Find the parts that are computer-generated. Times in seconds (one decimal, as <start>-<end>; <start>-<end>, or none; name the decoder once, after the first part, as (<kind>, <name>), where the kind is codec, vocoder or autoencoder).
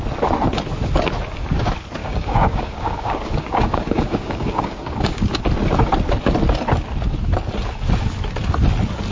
2.0-5.4 (codec, DAC)